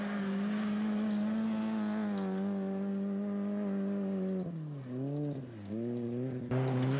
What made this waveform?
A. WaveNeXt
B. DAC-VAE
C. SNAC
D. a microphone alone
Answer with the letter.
D